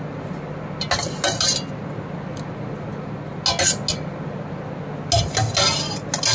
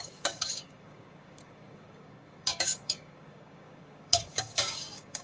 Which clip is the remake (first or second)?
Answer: second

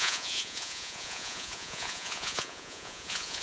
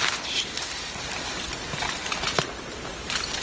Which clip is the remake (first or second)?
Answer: first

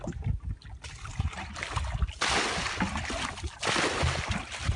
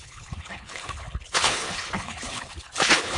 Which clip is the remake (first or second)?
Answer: second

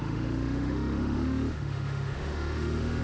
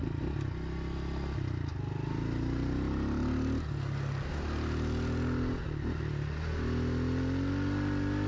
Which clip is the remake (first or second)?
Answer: first